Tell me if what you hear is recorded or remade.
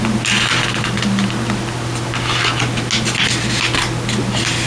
recorded